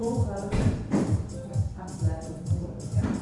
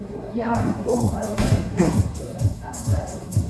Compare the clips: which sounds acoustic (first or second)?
first